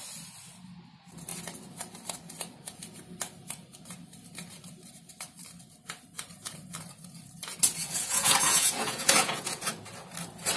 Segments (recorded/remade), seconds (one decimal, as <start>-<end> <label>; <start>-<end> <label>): 0.0-7.8 recorded; 7.8-9.7 remade; 9.7-10.6 recorded